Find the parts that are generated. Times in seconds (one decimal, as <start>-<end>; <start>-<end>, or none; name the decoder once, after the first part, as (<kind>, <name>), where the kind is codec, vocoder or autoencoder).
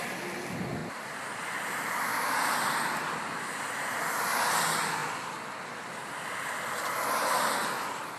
none